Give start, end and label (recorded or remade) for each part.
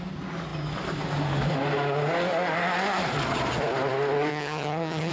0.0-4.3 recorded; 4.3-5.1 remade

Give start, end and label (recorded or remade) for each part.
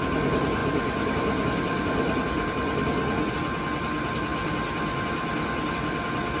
0.0-6.4 recorded